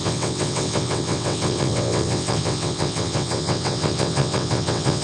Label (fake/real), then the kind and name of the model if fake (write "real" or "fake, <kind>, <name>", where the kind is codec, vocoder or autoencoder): fake, vocoder, WaveNeXt